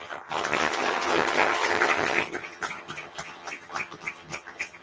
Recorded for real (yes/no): no